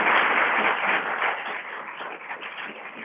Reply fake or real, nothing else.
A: real